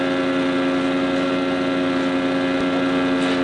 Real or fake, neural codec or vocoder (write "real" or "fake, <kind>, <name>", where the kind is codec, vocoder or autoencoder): real